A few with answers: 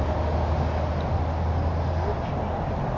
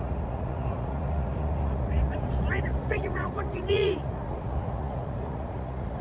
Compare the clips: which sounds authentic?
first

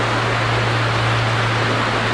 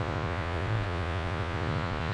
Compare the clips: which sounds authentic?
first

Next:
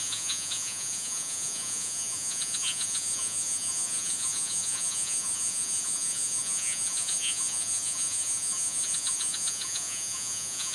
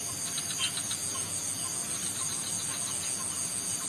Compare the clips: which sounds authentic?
second